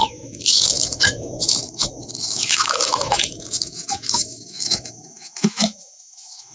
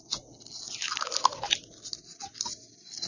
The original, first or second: second